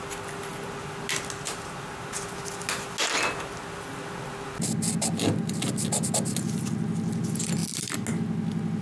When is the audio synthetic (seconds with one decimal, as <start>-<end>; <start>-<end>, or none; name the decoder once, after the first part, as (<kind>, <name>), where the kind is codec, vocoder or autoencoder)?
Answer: none